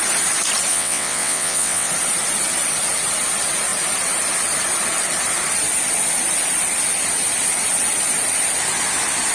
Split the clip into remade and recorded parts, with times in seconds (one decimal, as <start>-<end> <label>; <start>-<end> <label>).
0.0-0.7 recorded; 0.7-1.9 remade; 1.9-9.3 recorded